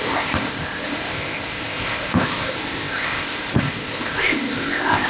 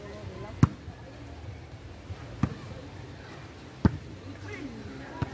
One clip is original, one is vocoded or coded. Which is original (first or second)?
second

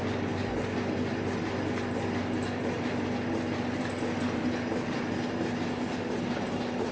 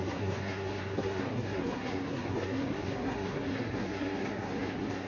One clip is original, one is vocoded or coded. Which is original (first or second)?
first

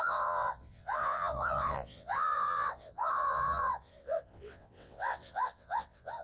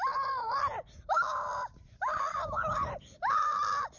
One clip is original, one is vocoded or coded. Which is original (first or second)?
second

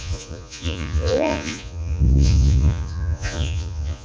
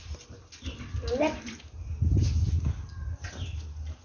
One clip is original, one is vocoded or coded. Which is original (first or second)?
second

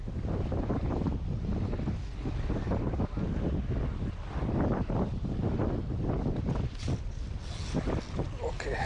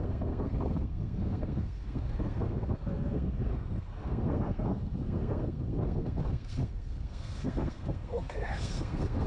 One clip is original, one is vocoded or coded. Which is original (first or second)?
first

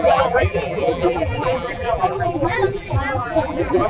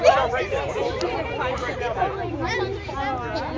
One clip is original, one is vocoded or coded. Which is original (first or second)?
second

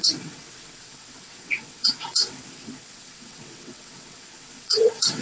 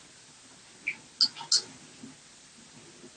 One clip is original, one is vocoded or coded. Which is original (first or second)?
second